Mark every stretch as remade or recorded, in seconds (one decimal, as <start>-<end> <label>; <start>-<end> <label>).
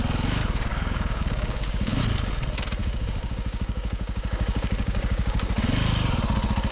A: 0.0-0.7 recorded; 0.7-2.0 remade; 2.0-2.8 recorded; 2.8-5.5 remade; 5.5-6.7 recorded